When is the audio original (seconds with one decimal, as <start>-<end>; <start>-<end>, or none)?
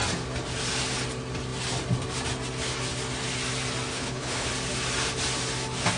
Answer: 0.0-3.9; 4.5-6.0